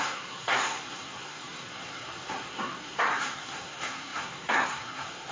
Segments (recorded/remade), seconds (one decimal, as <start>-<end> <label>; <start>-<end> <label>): 0.0-5.3 remade